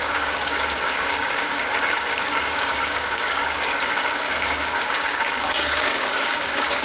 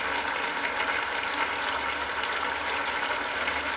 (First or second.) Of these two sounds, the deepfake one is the first